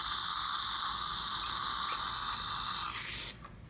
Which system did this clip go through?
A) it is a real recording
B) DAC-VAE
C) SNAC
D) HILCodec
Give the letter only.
A